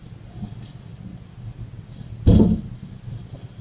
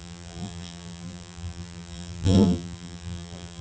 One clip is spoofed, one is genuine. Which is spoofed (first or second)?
second